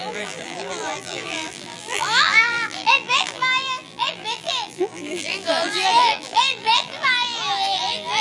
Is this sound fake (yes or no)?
yes